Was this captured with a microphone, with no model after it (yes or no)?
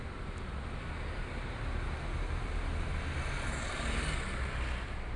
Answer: yes